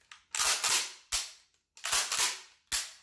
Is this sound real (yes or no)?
yes